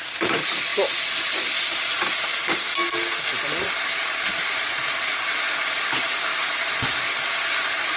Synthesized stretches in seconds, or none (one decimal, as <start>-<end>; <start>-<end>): none